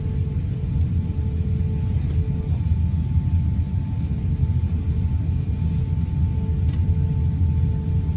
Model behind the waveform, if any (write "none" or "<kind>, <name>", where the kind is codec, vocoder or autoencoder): none